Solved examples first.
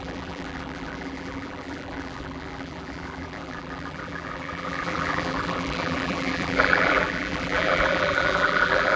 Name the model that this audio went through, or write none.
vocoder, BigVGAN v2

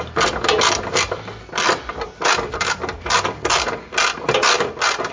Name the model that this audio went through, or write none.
none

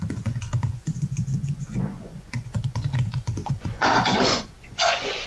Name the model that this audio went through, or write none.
vocoder, Vocos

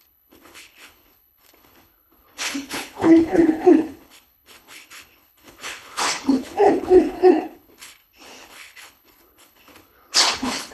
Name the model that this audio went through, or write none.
codec, HILCodec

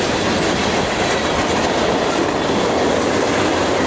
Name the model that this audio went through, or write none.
none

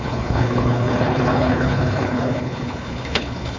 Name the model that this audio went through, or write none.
codec, HILCodec